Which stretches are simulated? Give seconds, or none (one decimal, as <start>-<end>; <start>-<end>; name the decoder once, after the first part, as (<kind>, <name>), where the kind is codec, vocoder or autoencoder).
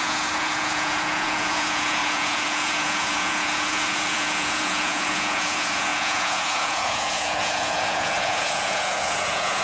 0.0-9.6 (vocoder, Vocos)